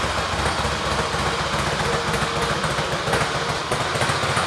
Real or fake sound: real